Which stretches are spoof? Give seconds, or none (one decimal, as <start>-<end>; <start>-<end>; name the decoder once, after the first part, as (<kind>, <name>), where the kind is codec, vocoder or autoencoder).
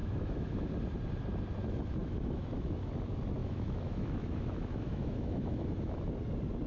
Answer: 0.0-0.7 (autoencoder, DAC-VAE); 2.0-2.9; 3.4-6.0